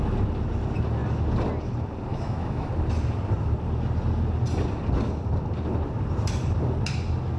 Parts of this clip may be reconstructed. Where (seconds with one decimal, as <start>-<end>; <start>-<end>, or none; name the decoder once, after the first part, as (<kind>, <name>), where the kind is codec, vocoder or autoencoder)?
2.1-2.7 (autoencoder, DAC-VAE)